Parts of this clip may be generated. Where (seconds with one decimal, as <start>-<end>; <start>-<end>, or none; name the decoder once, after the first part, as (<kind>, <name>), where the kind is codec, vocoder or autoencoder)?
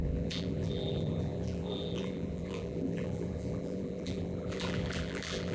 0.0-5.5 (vocoder, BigVGAN v2)